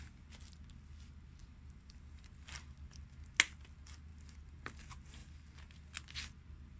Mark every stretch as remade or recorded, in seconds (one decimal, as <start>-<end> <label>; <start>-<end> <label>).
0.0-1.4 recorded; 1.4-3.3 remade; 3.3-4.1 recorded; 4.1-4.8 remade; 4.8-6.8 recorded